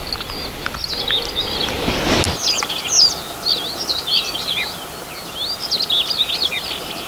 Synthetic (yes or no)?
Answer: no